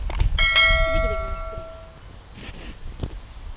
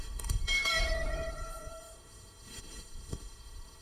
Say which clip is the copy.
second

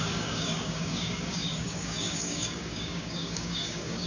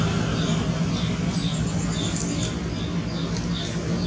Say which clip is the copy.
first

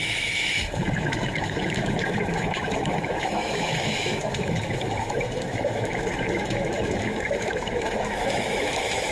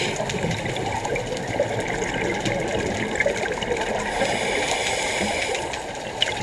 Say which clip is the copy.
first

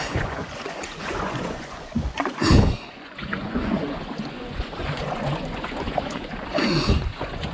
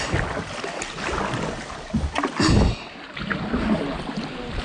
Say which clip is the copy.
first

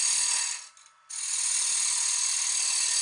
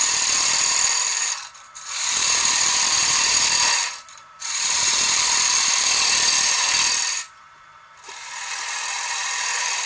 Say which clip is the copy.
second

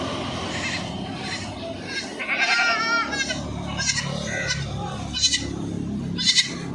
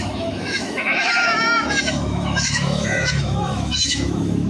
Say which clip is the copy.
second